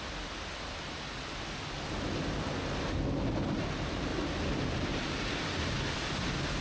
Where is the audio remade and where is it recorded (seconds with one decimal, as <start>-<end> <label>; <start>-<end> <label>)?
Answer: 0.0-6.6 recorded